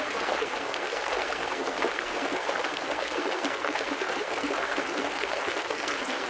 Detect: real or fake fake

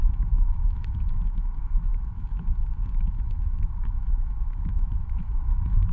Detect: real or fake fake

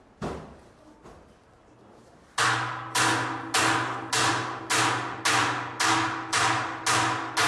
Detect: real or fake real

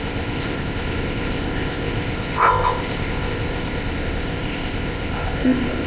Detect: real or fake fake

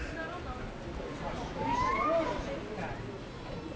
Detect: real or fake real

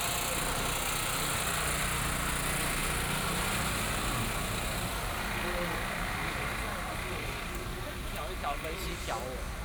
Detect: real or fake real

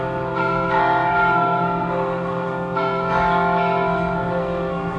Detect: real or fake fake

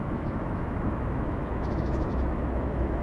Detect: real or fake fake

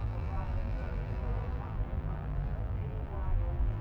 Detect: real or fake fake